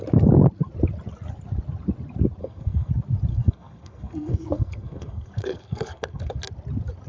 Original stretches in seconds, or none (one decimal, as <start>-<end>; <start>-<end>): 0.0-2.4; 2.9-3.3; 6.4-7.1